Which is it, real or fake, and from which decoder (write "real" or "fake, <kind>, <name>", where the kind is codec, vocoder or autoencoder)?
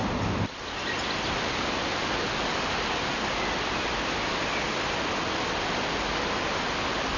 real